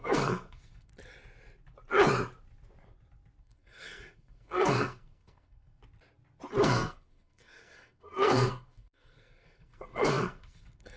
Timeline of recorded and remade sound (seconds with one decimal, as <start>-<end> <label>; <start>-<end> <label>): 0.0-0.9 remade; 0.9-3.4 recorded; 3.4-5.8 remade; 5.8-6.6 recorded; 6.6-11.0 remade